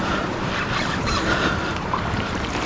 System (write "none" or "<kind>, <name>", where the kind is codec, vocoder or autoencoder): vocoder, BigVGAN v2